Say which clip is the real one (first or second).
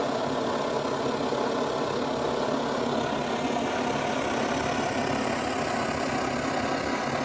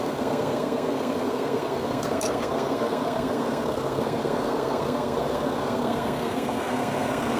first